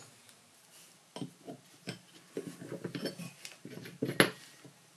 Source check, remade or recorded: recorded